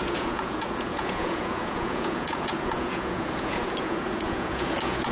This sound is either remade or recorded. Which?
remade